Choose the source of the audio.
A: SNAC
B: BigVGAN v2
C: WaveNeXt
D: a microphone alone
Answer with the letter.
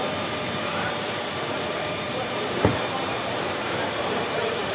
B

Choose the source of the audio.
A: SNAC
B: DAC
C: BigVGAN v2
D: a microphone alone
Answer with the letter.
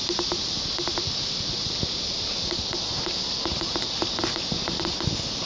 D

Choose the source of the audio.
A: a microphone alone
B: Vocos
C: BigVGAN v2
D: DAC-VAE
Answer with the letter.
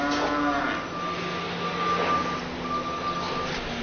A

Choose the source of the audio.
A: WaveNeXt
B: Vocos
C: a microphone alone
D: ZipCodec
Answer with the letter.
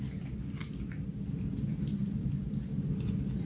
C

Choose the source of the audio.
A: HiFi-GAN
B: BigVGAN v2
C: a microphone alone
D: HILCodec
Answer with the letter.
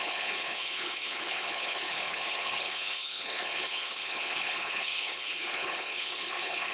D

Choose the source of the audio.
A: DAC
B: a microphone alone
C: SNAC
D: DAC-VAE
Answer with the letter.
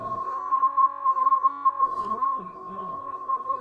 C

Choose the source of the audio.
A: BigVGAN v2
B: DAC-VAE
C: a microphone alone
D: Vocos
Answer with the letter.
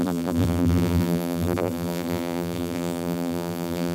A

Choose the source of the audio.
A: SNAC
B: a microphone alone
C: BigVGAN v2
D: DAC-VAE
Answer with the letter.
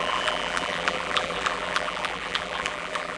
C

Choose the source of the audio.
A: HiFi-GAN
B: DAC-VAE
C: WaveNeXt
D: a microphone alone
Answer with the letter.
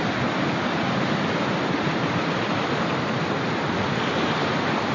D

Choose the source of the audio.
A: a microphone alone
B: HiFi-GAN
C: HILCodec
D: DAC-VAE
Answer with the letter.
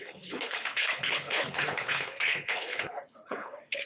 C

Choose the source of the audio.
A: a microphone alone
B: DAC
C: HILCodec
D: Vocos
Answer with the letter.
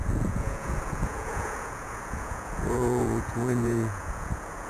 D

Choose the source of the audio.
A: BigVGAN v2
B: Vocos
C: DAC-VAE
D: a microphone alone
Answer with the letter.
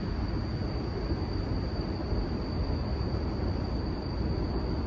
D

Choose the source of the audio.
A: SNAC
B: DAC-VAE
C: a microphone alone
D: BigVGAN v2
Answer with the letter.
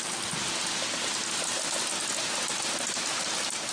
C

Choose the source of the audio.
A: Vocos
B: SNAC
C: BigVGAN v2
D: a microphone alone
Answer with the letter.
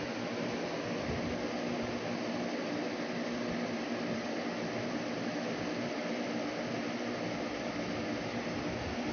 D